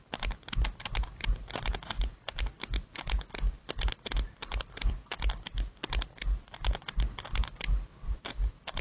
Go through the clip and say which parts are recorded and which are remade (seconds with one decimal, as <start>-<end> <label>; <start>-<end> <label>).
0.0-8.8 recorded